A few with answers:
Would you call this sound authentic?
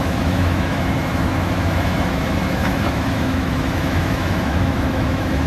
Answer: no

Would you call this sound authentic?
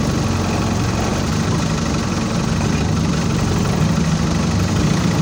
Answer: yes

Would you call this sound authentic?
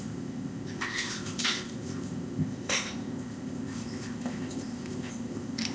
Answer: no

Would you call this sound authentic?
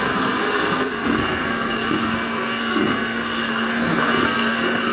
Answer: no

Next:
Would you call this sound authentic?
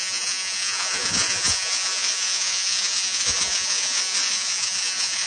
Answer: no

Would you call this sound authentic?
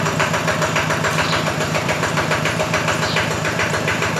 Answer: no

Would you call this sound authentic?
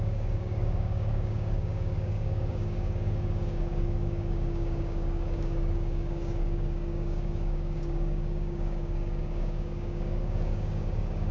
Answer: no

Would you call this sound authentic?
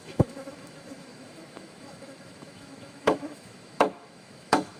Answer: no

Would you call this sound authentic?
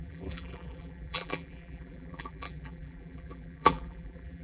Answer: no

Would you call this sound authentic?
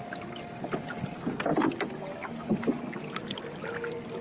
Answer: yes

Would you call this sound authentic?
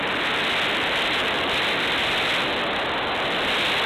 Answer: yes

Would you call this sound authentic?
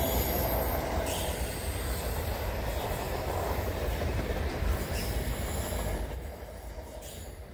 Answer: no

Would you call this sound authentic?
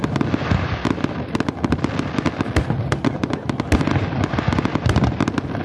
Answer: yes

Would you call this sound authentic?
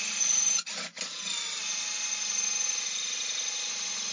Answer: yes